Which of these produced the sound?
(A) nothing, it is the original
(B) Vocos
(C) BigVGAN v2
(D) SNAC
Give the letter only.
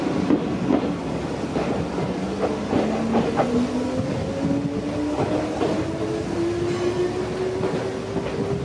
A